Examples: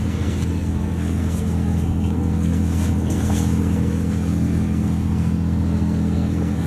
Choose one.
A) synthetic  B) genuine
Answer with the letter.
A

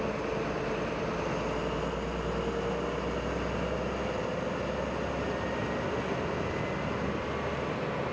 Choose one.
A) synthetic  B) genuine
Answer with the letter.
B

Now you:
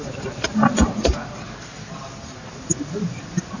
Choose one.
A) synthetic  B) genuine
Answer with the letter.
B